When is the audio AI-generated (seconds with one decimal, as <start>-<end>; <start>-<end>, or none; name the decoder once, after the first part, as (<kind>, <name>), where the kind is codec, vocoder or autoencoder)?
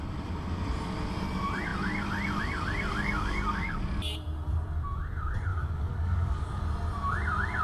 2.9-3.8 (codec, DAC); 5.5-6.6